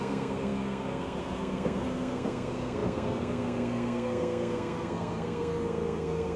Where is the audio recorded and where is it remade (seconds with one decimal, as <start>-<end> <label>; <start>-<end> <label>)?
0.0-6.4 remade